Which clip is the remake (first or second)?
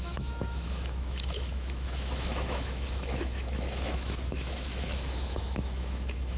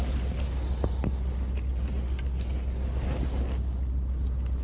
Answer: first